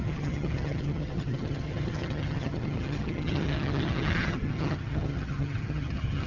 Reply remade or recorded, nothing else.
remade